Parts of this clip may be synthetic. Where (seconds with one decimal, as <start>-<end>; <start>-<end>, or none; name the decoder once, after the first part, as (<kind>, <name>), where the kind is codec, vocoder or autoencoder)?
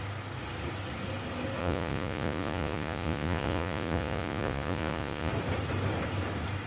1.6-5.3 (vocoder, Vocos)